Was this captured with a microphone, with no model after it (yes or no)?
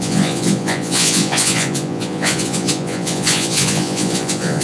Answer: no